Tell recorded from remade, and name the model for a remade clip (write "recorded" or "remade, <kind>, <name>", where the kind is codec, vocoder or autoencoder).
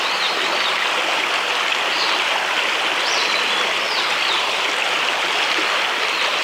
recorded